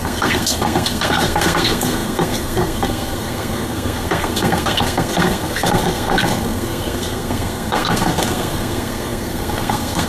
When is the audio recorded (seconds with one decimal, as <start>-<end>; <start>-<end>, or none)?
none